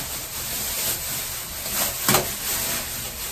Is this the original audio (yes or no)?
yes